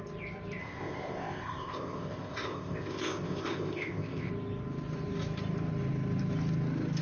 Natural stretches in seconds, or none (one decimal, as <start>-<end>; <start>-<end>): 0.0-0.6; 4.3-7.0